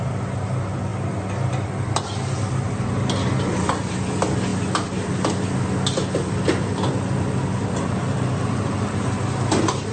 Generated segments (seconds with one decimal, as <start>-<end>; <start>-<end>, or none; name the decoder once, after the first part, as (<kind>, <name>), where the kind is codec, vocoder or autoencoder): none